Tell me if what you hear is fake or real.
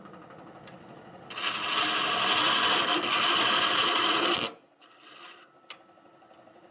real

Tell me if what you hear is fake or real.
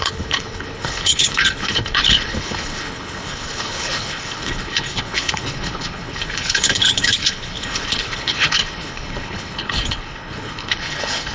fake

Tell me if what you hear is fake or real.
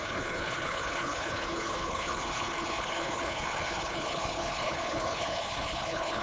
fake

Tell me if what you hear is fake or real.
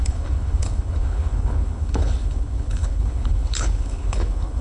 fake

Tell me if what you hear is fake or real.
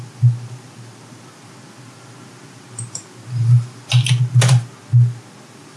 real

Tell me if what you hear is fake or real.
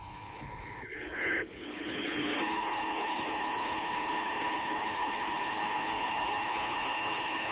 fake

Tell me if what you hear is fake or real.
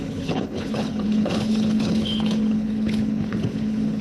fake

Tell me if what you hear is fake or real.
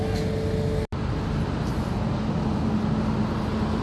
real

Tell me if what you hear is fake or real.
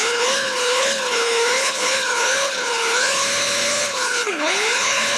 fake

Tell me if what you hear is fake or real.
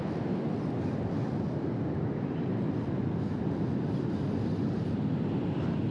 real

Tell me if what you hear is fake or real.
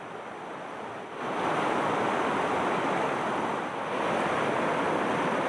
real